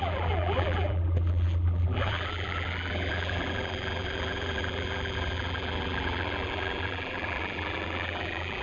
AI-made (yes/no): yes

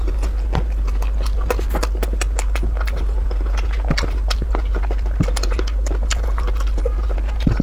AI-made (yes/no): no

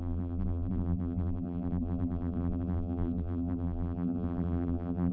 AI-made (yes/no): yes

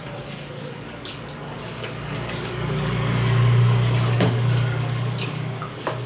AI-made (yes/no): yes